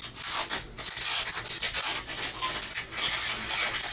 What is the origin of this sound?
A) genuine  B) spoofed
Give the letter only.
A